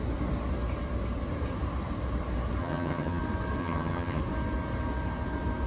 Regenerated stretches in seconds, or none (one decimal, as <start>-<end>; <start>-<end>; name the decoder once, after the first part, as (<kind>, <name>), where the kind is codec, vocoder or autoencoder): 2.6-3.2 (vocoder, HiFi-GAN); 3.6-4.2